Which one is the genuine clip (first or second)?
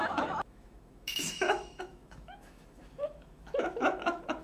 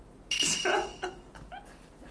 second